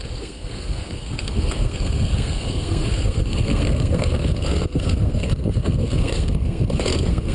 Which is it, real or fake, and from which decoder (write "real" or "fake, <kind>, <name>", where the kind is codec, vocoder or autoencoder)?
fake, codec, SNAC